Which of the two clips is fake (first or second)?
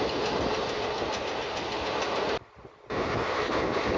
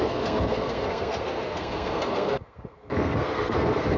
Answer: second